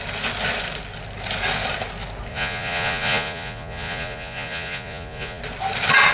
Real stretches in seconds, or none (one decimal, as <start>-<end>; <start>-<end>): 0.0-2.3; 5.4-6.1